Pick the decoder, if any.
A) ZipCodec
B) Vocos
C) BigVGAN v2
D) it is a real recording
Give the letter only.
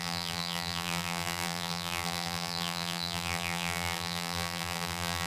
C